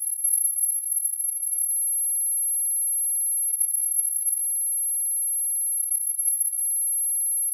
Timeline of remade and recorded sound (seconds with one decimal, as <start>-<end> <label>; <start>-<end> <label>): 0.0-1.7 remade; 1.7-3.5 recorded; 3.5-4.4 remade; 4.4-5.8 recorded; 5.8-6.6 remade; 6.6-7.5 recorded